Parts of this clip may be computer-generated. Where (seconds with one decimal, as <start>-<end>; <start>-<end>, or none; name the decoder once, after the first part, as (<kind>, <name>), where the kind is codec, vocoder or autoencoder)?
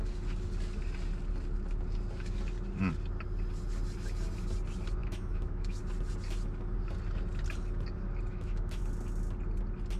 5.0-5.8 (autoencoder, DAC-VAE); 8.3-8.8